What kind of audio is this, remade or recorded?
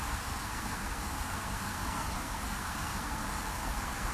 remade